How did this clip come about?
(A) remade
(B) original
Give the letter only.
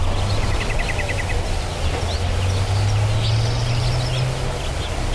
B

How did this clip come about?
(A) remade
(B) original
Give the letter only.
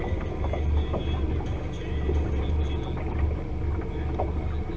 B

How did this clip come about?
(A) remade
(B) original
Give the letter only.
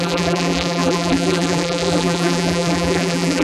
A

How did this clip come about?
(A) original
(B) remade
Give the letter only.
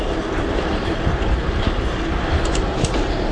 A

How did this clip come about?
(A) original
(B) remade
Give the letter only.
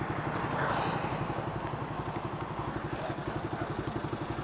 A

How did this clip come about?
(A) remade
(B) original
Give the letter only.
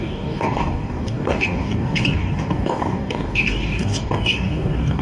A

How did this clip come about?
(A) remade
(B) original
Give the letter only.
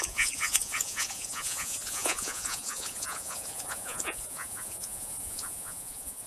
A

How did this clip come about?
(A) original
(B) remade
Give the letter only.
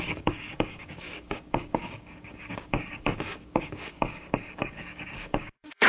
B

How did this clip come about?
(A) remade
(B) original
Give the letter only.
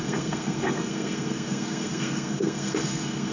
A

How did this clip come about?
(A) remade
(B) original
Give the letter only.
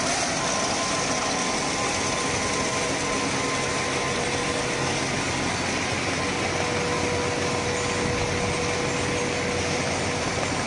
B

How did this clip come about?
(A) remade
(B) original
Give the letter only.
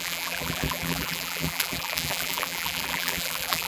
A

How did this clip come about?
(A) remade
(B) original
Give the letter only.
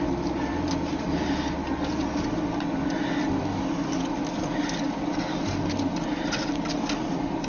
B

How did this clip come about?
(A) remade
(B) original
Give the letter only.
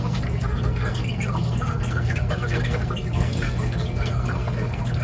A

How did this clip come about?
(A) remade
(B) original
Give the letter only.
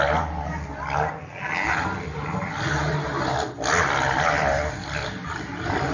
B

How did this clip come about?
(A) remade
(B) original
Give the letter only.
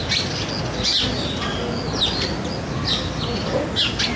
B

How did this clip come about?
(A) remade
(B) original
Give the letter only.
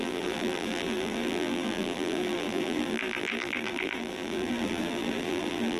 A